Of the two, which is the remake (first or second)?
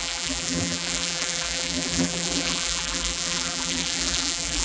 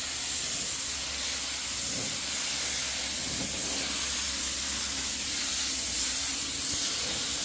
first